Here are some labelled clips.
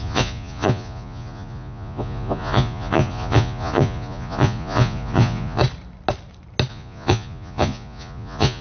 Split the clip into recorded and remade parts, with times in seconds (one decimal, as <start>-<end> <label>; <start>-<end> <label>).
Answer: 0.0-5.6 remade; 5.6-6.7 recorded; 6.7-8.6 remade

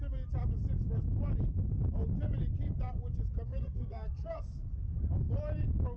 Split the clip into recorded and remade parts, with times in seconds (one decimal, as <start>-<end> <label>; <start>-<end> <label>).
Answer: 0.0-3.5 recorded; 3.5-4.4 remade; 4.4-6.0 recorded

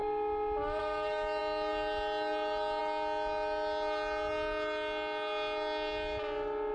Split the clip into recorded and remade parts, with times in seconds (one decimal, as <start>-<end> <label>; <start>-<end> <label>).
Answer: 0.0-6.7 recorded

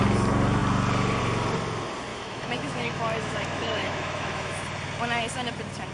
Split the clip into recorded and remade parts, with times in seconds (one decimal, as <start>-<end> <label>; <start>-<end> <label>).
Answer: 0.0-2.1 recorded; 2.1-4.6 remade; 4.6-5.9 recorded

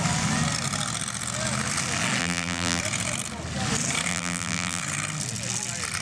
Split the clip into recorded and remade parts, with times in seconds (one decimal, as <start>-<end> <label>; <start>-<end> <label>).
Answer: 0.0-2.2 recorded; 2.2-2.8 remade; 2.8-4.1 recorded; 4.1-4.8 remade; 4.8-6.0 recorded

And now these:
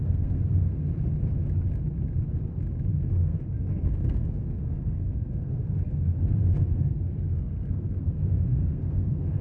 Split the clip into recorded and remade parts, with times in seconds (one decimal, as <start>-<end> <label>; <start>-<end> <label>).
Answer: 0.0-0.9 remade; 0.9-2.9 recorded; 2.9-9.4 remade

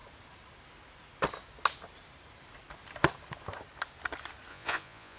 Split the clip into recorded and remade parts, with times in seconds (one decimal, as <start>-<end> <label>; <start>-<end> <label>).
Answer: 0.0-4.5 recorded; 4.5-5.2 remade

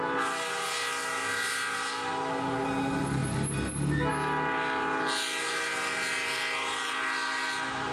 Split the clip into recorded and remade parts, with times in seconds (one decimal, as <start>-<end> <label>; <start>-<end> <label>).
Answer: 0.0-7.9 recorded